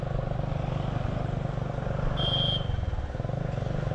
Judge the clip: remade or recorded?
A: recorded